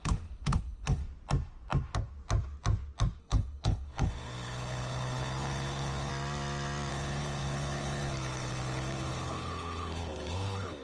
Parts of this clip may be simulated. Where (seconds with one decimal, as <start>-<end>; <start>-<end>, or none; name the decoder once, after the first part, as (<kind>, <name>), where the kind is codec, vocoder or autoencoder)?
0.0-1.0 (codec, HILCodec); 3.2-6.1; 6.9-10.8